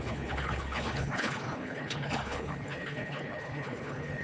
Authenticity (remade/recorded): remade